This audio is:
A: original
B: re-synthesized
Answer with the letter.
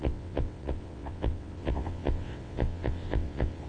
B